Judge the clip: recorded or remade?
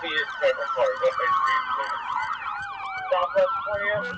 recorded